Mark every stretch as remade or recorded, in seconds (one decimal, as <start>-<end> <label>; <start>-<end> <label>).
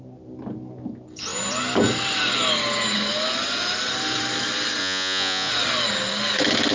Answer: 0.0-4.8 recorded; 4.8-5.5 remade; 5.5-6.7 recorded